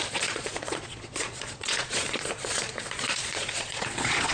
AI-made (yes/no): yes